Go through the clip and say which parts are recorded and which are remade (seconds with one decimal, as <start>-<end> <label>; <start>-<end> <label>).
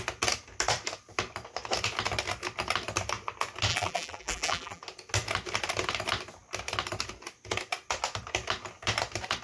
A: 0.0-3.7 recorded; 3.7-4.8 remade; 4.8-9.4 recorded